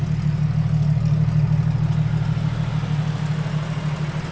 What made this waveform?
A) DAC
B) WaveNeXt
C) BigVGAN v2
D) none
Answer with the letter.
D